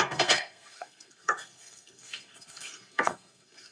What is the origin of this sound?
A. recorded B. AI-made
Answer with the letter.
B